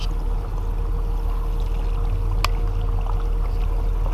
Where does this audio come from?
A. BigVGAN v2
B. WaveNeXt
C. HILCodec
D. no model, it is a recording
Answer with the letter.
D